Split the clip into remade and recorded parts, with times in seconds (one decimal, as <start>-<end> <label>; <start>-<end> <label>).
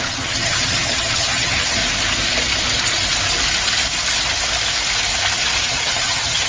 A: 0.0-1.8 remade; 1.8-5.7 recorded; 5.7-6.5 remade